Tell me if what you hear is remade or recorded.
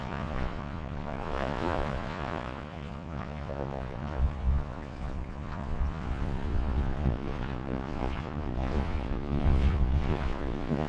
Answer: remade